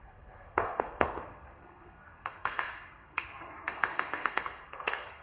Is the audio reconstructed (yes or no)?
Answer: yes